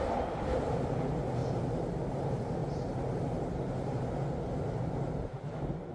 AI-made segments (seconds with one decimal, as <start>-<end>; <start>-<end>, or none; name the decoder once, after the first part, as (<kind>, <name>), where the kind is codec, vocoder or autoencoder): 0.0-1.4 (vocoder, BigVGAN v2); 2.1-2.6; 5.3-5.9